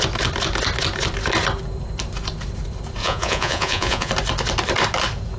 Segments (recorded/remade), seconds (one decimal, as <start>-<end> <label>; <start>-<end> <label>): 0.0-3.0 recorded; 3.0-4.1 remade; 4.1-5.4 recorded